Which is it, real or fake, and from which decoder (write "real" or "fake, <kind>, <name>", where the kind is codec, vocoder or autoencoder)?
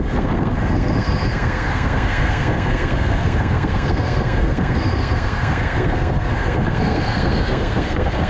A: fake, codec, SNAC